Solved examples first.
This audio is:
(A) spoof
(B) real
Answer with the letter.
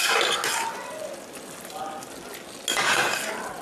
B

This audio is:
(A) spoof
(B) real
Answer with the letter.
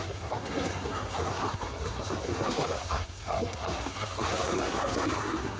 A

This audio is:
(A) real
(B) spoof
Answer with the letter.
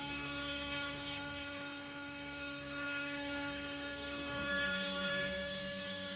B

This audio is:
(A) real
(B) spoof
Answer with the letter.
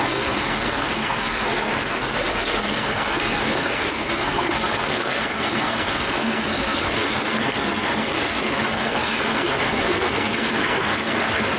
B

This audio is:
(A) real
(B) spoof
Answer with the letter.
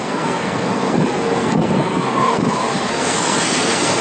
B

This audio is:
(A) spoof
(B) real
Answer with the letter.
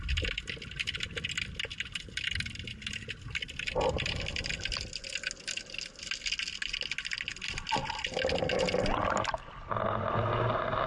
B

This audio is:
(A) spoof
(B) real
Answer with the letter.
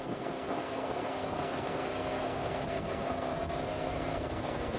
A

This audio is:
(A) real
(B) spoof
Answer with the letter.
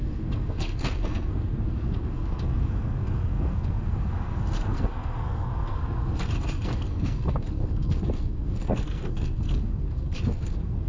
B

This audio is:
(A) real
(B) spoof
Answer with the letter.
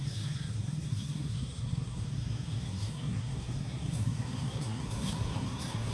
B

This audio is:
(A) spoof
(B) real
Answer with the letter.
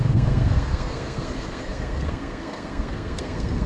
A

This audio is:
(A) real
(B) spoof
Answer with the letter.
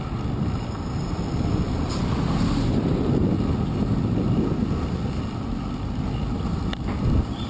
A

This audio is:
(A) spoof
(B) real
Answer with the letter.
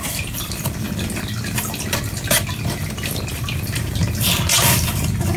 B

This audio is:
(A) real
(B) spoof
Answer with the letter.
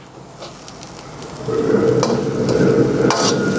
A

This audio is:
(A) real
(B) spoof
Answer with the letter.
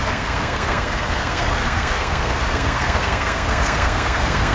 B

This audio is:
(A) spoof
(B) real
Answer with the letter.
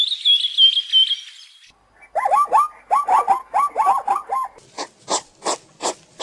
B